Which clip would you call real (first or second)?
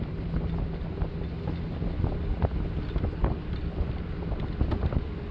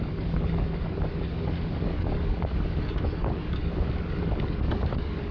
first